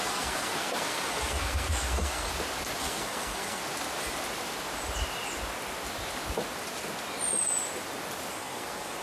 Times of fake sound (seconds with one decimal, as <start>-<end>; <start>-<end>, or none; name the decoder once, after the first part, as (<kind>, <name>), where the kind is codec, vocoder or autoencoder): 0.0-2.3 (codec, SNAC); 2.8-3.6; 8.3-9.0